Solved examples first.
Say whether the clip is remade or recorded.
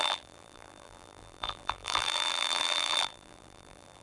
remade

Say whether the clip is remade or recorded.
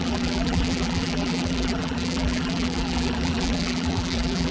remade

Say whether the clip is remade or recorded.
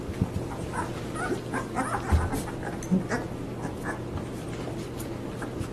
recorded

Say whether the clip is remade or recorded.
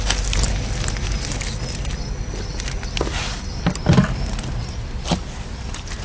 recorded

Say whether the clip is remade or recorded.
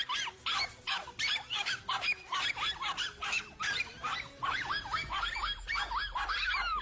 remade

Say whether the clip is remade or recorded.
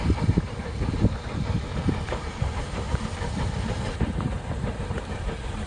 remade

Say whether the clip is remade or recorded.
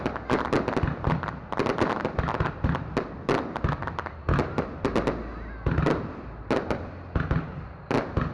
recorded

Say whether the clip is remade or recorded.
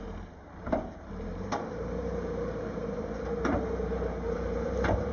remade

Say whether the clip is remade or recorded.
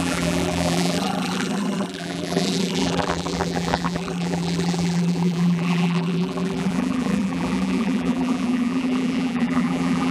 remade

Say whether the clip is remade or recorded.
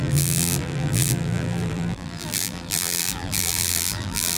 remade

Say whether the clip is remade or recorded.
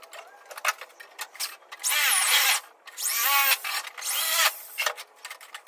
recorded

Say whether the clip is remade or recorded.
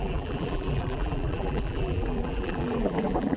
remade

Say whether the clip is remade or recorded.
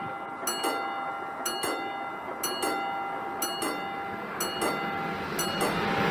recorded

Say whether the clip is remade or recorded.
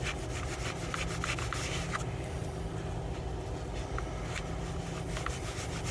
recorded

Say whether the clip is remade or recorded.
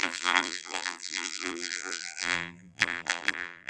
remade